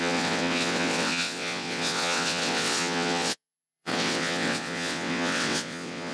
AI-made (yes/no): yes